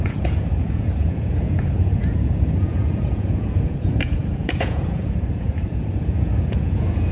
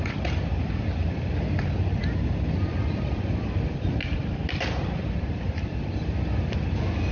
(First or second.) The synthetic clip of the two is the first